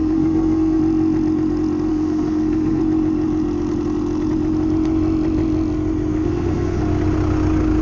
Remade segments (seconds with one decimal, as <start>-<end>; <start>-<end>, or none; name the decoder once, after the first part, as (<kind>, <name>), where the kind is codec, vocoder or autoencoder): 0.0-0.8 (codec, SNAC); 1.9-2.8; 6.1-6.8